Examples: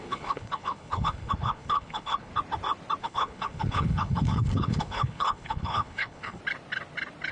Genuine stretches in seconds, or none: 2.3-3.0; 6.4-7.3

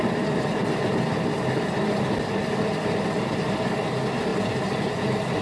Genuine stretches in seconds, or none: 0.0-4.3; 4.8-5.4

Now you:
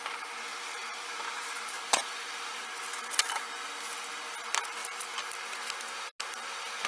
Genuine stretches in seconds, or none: 0.0-0.5; 2.7-6.9